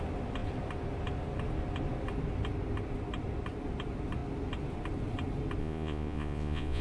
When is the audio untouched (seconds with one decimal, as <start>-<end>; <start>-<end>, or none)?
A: 0.0-5.6